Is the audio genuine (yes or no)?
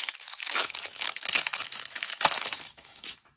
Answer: no